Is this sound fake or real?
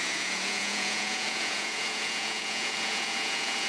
fake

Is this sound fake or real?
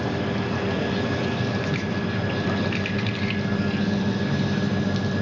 real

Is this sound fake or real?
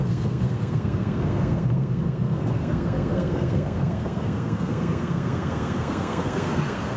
fake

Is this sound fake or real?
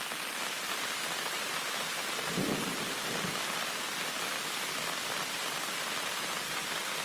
real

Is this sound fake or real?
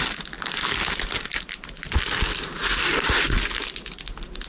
real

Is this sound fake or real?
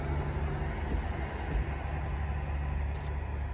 real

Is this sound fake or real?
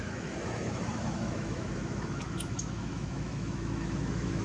fake